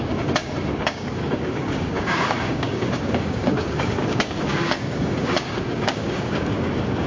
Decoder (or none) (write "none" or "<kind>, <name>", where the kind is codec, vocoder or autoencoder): codec, DAC